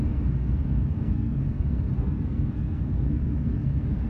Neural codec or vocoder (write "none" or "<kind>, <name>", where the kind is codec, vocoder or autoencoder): codec, SNAC